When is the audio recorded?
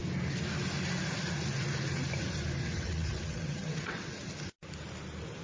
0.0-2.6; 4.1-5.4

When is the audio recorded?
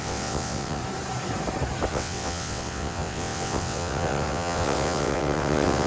0.8-1.9